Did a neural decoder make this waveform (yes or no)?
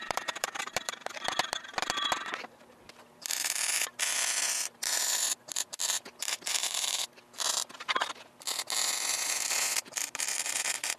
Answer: yes